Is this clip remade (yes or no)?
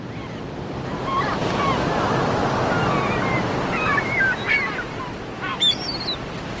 no